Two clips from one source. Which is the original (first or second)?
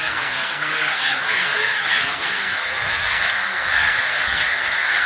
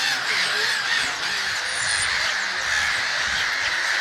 second